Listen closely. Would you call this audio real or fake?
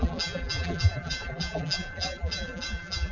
fake